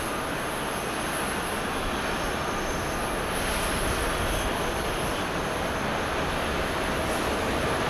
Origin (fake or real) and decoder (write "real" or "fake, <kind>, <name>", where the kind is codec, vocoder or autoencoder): real